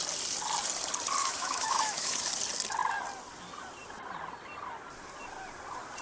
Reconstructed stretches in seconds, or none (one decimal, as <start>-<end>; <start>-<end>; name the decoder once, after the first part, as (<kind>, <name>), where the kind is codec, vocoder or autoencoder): 1.2-2.3 (autoencoder, DAC-VAE)